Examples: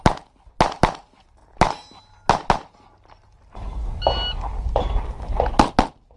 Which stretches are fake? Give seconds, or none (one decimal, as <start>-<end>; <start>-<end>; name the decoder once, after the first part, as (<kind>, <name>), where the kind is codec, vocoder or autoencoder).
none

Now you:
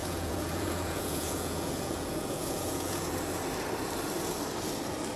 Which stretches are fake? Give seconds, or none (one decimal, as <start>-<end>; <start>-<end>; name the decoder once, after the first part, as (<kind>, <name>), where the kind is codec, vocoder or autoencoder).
0.0-3.1 (vocoder, Vocos)

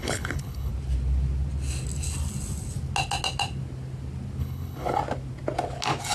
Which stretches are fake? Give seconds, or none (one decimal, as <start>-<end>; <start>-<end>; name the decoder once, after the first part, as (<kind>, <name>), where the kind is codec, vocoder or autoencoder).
0.0-0.7 (codec, HILCodec); 4.4-5.0

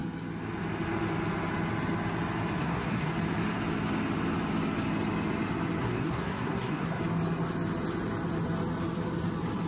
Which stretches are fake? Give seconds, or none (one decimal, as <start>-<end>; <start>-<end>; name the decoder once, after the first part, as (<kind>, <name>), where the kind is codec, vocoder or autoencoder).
2.6-3.1 (codec, SNAC); 5.8-7.0